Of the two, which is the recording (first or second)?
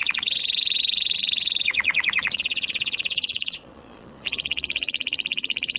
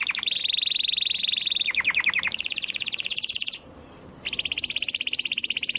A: second